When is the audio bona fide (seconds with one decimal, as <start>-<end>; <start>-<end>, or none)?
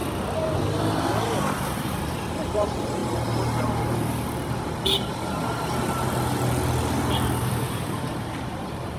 0.0-1.6; 3.0-7.4